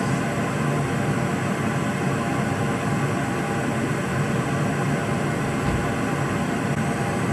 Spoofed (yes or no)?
no